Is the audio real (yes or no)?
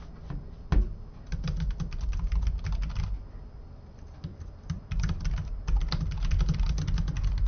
yes